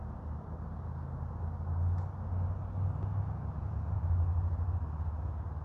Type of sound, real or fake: real